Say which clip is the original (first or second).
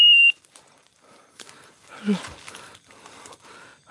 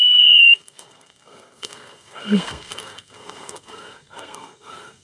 first